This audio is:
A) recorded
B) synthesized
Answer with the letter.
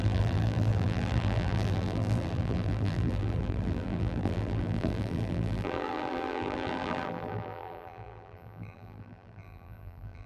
B